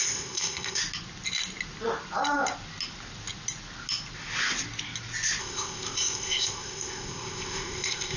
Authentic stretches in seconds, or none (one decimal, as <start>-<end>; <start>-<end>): 0.8-5.4